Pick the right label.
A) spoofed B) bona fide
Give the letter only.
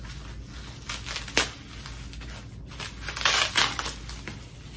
B